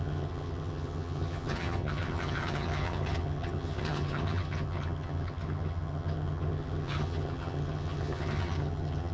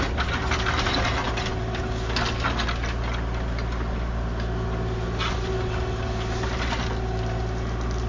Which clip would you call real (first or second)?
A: second